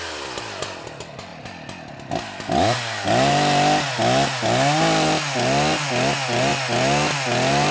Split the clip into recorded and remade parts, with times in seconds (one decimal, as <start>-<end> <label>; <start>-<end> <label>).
0.0-7.7 recorded